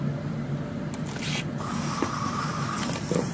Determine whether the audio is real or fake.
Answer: real